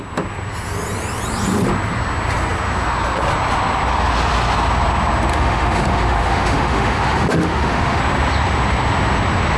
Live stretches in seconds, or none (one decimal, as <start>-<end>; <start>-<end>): 0.0-5.3; 8.0-9.6